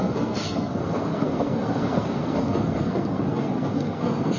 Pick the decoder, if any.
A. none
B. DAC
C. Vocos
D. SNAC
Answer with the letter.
D